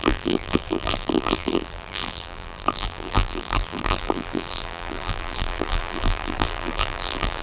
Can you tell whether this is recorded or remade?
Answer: remade